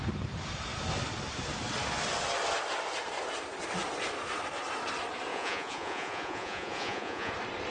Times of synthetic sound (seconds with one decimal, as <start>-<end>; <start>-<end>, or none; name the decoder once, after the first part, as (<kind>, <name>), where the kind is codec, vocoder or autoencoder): 5.3-7.3 (vocoder, Vocos)